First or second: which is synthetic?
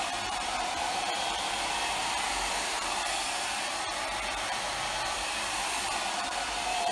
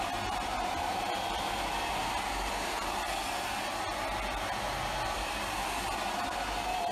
first